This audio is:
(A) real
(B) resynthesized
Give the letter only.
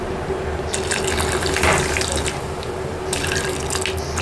A